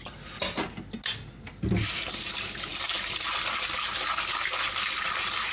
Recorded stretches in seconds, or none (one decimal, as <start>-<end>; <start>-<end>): 0.0-5.5